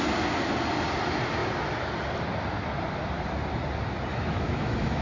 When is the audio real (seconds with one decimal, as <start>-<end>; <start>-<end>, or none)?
0.0-4.1